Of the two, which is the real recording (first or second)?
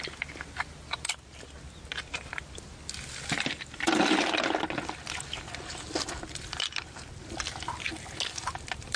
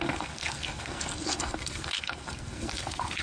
first